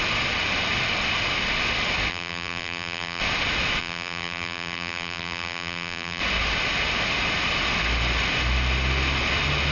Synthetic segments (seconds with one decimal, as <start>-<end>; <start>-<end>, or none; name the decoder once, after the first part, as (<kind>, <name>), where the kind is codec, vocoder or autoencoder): 2.1-3.2 (vocoder, BigVGAN v2); 3.8-6.2